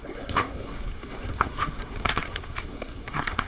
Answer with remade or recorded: remade